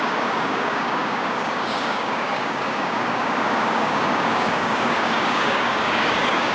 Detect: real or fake fake